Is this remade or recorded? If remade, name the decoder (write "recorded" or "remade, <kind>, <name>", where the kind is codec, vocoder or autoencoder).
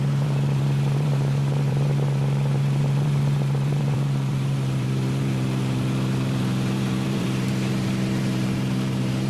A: remade, vocoder, BigVGAN v2